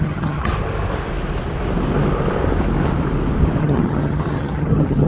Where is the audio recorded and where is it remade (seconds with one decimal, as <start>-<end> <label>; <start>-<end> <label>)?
0.0-0.5 remade; 0.5-3.6 recorded; 3.6-5.1 remade